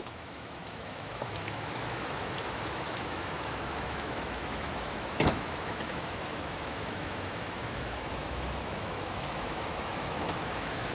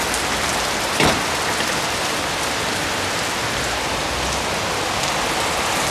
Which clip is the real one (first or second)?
second